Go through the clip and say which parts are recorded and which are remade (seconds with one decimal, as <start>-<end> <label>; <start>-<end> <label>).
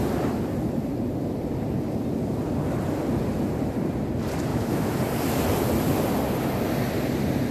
0.0-4.5 recorded; 4.5-5.0 remade; 5.0-7.5 recorded